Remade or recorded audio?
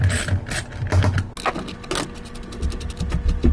recorded